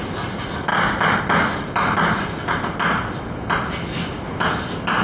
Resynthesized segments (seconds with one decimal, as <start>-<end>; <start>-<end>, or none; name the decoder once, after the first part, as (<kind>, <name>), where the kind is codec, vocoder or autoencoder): 0.7-1.2 (vocoder, BigVGAN v2)